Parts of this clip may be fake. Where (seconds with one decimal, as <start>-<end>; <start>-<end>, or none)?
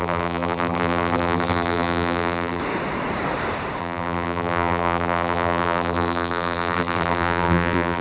0.0-2.6; 3.8-8.0